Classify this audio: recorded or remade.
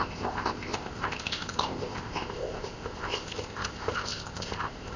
remade